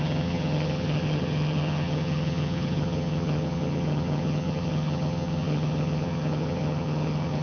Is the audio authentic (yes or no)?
no